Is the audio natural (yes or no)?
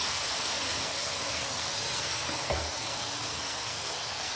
no